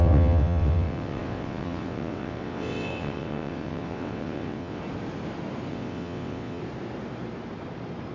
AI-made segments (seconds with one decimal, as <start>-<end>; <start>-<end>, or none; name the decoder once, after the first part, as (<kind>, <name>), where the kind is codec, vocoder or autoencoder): 0.0-4.8 (vocoder, WaveNeXt); 5.7-6.6